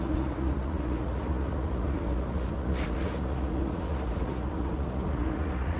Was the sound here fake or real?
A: fake